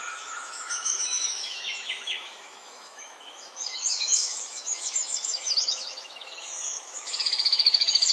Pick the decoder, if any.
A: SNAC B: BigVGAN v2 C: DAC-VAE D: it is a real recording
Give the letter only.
C